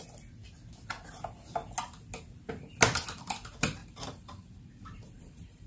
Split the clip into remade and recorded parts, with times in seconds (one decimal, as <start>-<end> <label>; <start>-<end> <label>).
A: 0.0-3.8 recorded; 3.8-5.7 remade

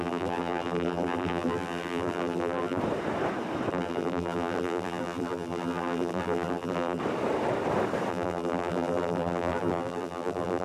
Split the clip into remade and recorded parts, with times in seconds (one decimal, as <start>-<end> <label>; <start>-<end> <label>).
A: 0.0-2.8 remade; 2.8-3.7 recorded; 3.7-7.0 remade; 7.0-8.1 recorded; 8.1-10.6 remade

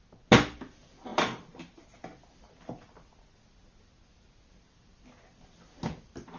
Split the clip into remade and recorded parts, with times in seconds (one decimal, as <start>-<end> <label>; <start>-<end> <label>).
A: 0.0-1.1 recorded; 1.1-1.8 remade; 1.8-6.4 recorded

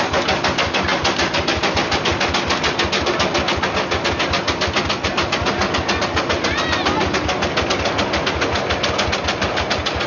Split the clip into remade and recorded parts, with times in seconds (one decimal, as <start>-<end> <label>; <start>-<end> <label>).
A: 0.0-10.1 recorded

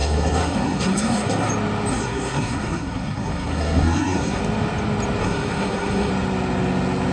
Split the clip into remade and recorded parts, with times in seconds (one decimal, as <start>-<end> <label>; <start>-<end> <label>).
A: 0.0-1.5 remade; 1.5-1.9 recorded; 1.9-4.4 remade; 4.4-5.2 recorded; 5.2-6.1 remade; 6.1-7.1 recorded